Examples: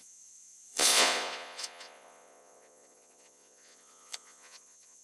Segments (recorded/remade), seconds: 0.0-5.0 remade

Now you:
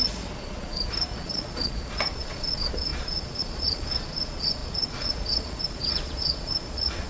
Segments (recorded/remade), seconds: 0.0-7.1 remade

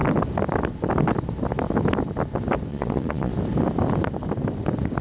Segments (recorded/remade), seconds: 0.0-2.7 recorded; 2.7-3.3 remade; 3.3-5.0 recorded

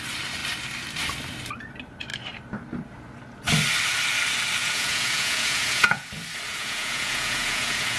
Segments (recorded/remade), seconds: 0.0-4.6 recorded; 4.6-6.1 remade; 6.1-6.5 recorded; 6.5-8.0 remade

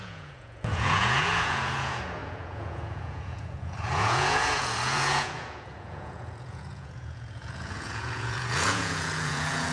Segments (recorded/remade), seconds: 0.0-9.7 remade